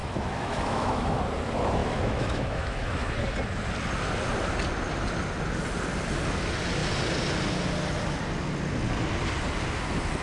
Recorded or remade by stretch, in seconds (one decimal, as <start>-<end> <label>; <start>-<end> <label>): 0.0-1.2 remade; 1.2-1.8 recorded; 1.8-3.1 remade; 3.1-10.2 recorded